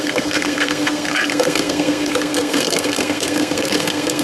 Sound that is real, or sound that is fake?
fake